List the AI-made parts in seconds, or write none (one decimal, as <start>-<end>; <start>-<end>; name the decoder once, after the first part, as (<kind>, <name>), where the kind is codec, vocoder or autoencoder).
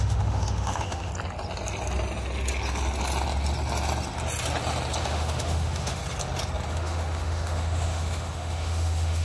0.0-1.1 (autoencoder, DAC-VAE); 5.0-6.0; 6.7-9.2